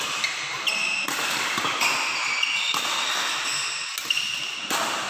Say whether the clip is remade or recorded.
recorded